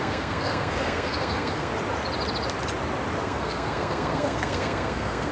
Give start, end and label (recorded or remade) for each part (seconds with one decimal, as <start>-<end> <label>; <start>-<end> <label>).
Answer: 0.0-1.7 remade; 1.7-3.2 recorded; 3.2-5.3 remade